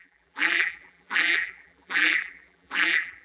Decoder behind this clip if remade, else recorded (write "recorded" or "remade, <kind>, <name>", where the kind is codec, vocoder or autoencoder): remade, vocoder, BigVGAN v2